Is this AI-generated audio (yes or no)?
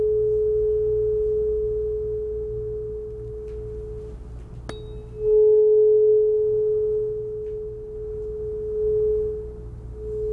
no